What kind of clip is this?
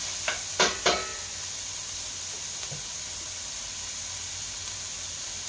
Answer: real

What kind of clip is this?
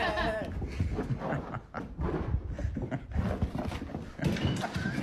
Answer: real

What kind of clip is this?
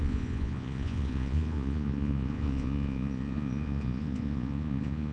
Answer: fake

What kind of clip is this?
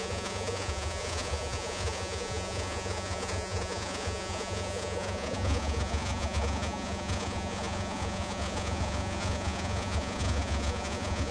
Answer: fake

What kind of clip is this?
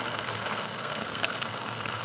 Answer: fake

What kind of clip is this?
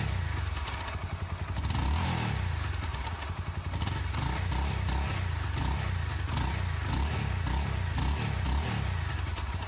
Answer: real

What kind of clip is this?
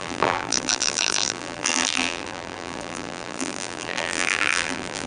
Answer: fake